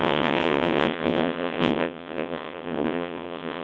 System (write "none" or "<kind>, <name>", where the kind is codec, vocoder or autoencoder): vocoder, WaveNeXt